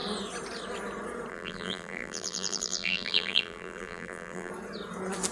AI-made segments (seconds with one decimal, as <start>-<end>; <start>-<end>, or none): 1.3-4.5